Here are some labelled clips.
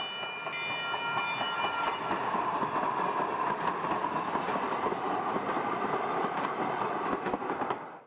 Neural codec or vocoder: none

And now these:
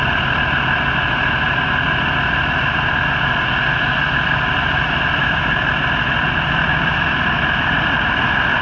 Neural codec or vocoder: none